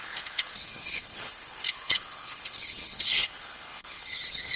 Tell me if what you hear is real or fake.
fake